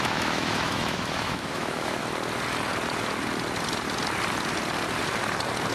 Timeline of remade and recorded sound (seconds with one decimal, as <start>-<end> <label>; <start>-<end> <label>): 0.0-2.0 remade; 2.0-5.7 recorded